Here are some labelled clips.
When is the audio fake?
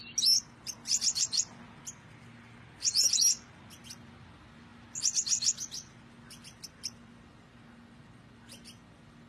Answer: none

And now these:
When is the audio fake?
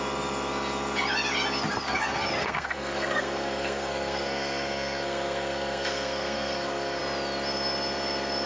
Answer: 2.4-7.0 (codec, SNAC)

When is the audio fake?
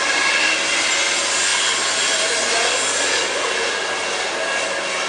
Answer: none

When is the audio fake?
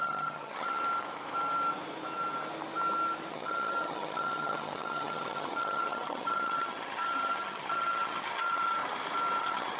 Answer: 0.0-0.8 (vocoder, HiFi-GAN); 3.3-8.8; 9.4-9.8